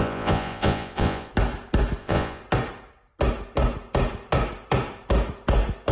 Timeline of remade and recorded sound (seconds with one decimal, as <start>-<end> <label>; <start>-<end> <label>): 0.0-1.3 remade; 1.3-2.0 recorded; 2.0-2.4 remade; 2.4-5.9 recorded